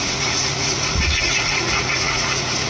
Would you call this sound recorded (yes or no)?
no